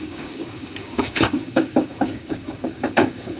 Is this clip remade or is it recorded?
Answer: remade